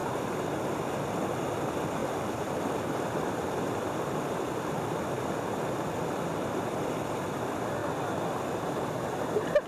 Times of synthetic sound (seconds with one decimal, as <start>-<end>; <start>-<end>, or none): 2.0-7.3; 7.8-8.6